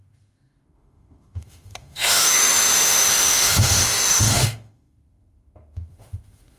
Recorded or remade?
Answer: remade